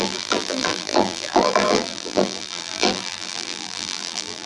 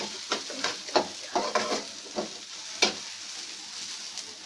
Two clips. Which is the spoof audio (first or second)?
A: first